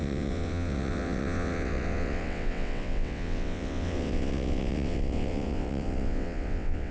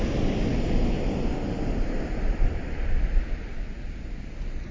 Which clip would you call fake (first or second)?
first